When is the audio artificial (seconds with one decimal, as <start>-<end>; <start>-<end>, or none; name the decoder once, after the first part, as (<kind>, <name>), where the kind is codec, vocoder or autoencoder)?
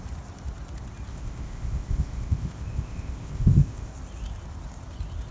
1.1-3.9 (codec, ZipCodec)